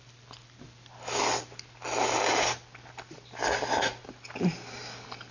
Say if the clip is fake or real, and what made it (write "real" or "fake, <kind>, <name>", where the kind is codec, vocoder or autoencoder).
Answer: real